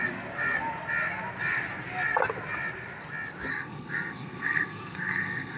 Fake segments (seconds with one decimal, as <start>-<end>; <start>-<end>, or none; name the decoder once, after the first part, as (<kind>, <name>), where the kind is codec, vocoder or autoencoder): 3.5-5.6 (codec, SNAC)